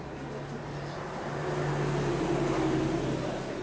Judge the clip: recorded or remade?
recorded